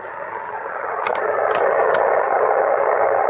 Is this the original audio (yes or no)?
no